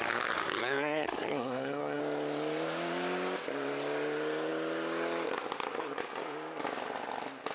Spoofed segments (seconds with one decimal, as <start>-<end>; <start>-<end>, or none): 0.6-2.0